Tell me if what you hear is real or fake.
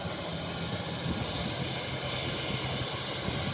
real